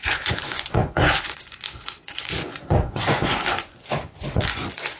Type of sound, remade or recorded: remade